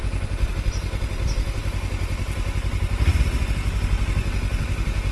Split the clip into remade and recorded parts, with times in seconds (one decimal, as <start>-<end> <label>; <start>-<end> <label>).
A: 0.0-5.1 recorded